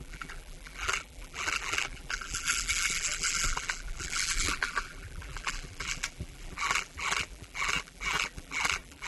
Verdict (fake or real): fake